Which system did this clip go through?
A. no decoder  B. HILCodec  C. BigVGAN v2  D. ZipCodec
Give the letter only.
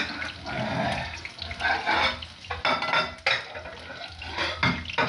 A